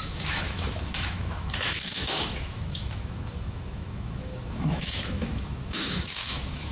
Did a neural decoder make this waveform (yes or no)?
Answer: yes